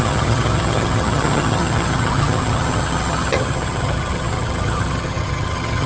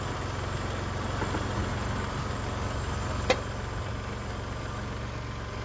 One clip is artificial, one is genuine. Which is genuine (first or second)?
second